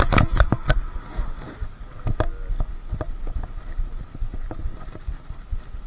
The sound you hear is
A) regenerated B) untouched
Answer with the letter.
B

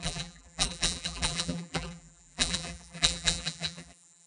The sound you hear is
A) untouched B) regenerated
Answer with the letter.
B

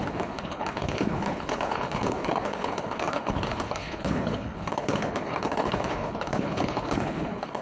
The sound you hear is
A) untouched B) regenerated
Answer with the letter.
B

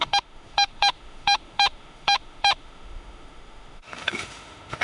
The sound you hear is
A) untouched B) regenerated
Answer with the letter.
B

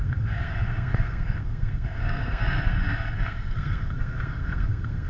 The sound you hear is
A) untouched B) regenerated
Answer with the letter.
B